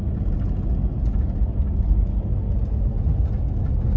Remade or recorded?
recorded